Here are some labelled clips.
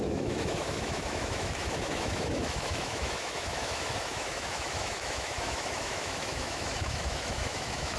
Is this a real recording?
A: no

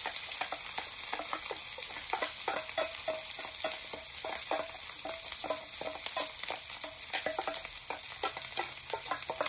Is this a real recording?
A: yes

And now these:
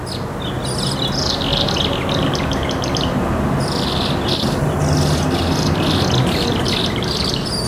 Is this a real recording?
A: yes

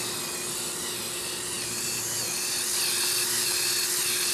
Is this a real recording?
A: yes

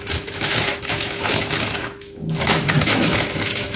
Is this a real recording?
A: no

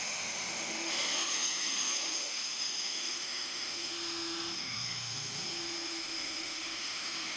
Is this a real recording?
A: no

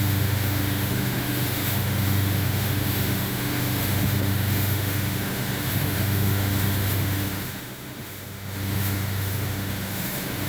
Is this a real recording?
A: no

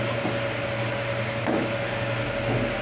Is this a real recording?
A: yes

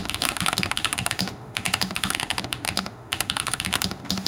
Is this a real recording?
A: no